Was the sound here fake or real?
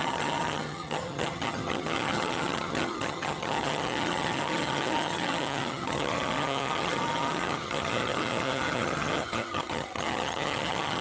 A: fake